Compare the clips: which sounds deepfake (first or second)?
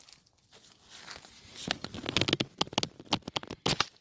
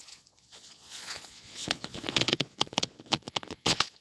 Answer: second